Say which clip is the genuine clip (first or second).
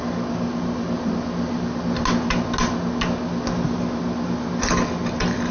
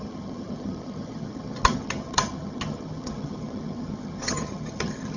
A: first